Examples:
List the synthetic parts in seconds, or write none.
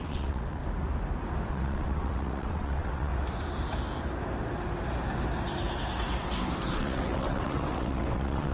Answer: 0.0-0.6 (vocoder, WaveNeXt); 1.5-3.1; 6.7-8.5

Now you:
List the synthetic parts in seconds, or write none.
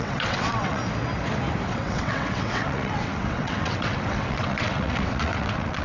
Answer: 0.0-0.8 (vocoder, WaveNeXt); 1.7-5.8